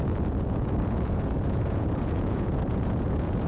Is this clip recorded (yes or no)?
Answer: no